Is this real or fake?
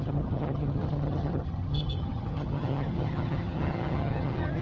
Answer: fake